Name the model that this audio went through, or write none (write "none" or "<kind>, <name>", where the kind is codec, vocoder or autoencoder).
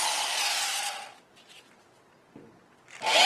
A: none